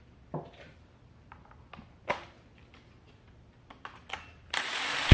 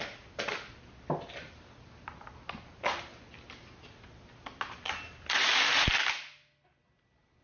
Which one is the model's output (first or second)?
first